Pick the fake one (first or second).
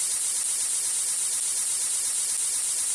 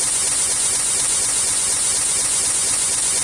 second